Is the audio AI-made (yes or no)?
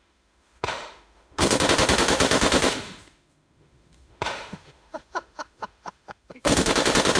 yes